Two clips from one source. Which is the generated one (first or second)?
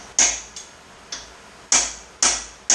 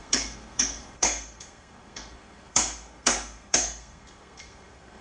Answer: second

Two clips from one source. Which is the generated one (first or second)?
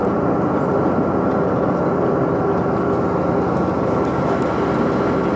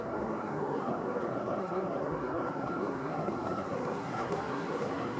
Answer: second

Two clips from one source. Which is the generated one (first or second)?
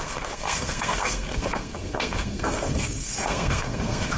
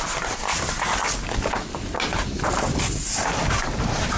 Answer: first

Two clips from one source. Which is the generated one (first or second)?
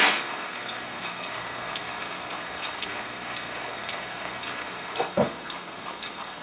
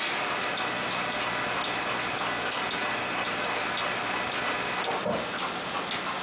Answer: first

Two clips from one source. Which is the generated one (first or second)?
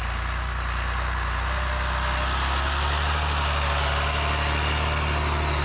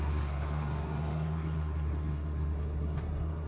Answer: second